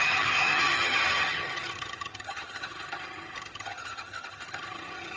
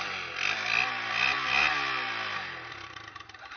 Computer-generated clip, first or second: first